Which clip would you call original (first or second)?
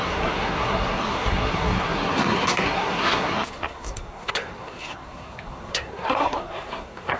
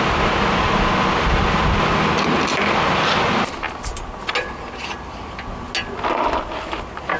second